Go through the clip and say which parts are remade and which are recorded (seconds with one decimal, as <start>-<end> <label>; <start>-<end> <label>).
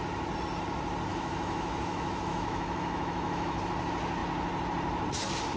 0.0-1.1 recorded; 1.1-3.6 remade; 3.6-5.6 recorded